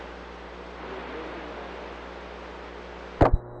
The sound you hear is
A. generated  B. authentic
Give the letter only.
B